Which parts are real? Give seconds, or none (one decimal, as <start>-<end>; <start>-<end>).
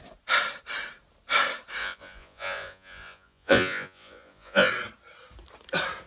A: 0.0-1.8; 4.7-6.1